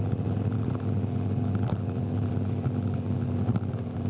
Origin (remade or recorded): recorded